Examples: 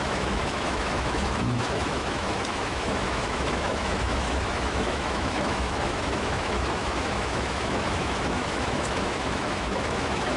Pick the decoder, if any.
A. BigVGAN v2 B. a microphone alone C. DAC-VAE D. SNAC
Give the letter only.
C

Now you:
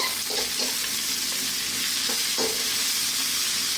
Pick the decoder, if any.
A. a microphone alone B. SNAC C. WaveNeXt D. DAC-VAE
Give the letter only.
A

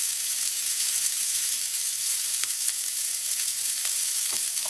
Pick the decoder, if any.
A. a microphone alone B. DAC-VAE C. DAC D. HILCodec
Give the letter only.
B